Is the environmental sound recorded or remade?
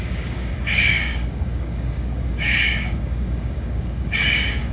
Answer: remade